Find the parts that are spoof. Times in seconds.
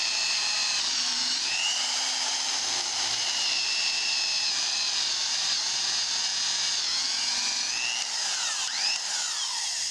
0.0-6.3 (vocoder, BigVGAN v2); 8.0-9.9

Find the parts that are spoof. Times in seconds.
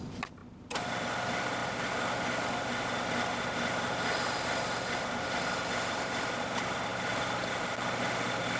none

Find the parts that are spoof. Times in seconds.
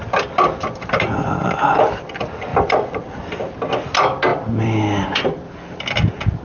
4.3-5.7 (vocoder, BigVGAN v2)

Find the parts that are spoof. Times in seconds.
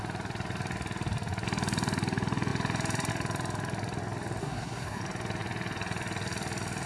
4.4-5.0 (codec, SNAC)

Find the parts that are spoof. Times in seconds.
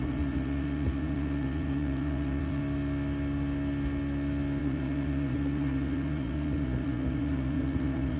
0.0-2.6 (vocoder, Vocos); 4.6-8.2